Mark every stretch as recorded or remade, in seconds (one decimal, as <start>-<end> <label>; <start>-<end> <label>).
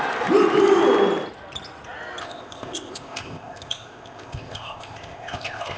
0.0-2.2 recorded; 2.2-5.8 remade